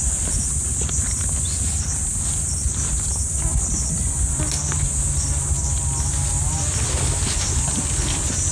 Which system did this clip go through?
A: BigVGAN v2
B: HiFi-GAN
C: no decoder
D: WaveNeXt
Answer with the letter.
C